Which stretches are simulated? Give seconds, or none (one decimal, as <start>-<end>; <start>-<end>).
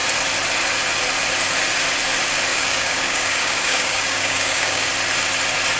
2.5-4.9